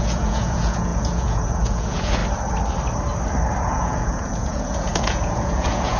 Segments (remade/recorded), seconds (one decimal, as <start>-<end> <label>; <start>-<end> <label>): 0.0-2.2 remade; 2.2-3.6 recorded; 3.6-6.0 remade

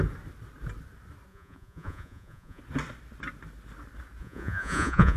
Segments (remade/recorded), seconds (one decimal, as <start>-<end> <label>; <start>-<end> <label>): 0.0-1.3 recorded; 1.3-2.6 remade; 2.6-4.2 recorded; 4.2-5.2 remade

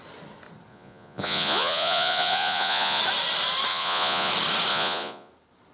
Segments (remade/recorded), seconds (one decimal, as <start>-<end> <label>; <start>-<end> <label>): 0.0-0.7 recorded; 0.7-3.0 remade; 3.0-3.7 recorded; 3.7-4.3 remade; 4.3-4.7 recorded; 4.7-5.3 remade; 5.3-5.7 recorded

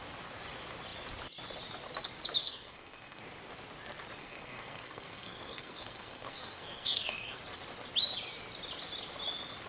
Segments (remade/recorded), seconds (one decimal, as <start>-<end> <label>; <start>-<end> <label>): 0.0-2.4 recorded; 2.4-3.2 remade; 3.2-4.2 recorded; 4.2-7.4 remade; 7.4-9.7 recorded

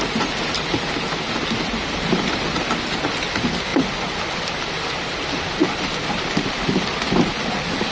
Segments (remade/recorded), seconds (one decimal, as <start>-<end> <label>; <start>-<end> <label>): 0.0-3.7 recorded; 3.7-4.9 remade; 4.9-7.9 recorded

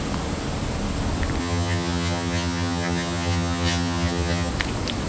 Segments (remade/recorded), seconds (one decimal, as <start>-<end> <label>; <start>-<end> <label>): 0.0-1.4 recorded; 1.4-4.5 remade; 4.5-5.1 recorded